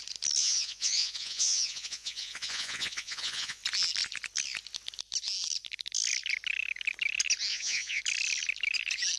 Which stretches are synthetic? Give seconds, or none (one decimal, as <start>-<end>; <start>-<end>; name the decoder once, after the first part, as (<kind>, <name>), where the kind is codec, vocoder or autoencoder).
0.4-3.6 (vocoder, Vocos); 7.5-8.0